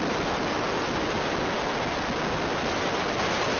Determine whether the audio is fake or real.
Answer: real